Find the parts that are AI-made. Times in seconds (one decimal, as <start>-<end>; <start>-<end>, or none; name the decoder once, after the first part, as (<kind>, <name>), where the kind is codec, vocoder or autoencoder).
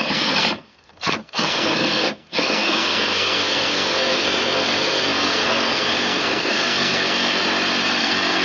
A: 0.0-7.4 (codec, SNAC); 8.0-8.4